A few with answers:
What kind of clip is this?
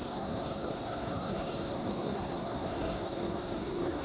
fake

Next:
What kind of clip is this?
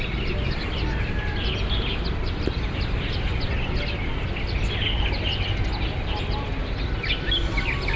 real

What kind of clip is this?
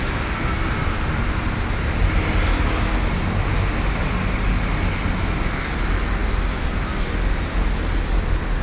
real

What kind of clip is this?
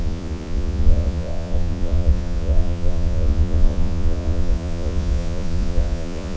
fake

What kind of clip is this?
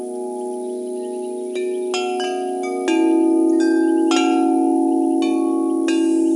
real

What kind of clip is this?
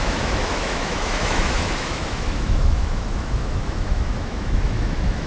fake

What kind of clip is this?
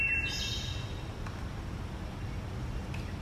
real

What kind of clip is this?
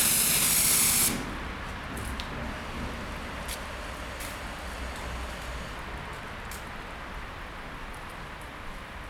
real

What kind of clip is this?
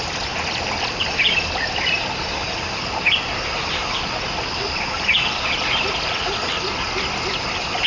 real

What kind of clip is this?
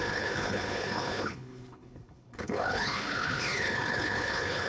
fake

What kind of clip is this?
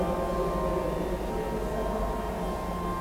real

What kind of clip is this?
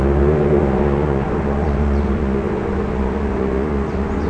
fake